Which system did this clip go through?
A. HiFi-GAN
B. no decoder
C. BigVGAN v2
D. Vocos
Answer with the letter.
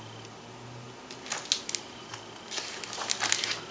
B